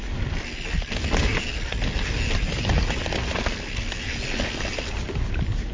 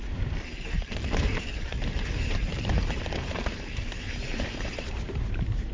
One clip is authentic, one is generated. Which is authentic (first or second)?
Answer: first